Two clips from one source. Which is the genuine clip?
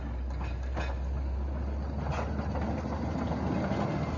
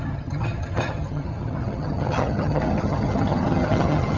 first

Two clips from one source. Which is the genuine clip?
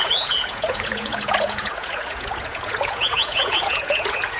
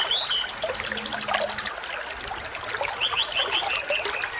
second